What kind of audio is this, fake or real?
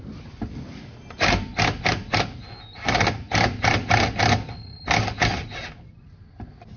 real